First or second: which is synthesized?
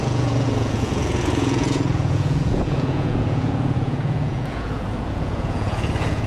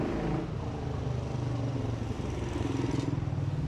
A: first